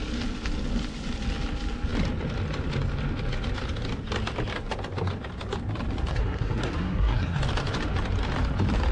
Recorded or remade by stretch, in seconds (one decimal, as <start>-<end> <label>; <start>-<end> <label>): 0.0-6.1 recorded; 6.1-7.4 remade; 7.4-8.9 recorded